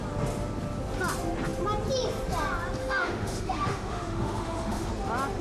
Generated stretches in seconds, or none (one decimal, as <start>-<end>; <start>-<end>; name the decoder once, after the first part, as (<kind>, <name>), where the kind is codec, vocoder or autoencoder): 2.8-4.9 (autoencoder, DAC-VAE)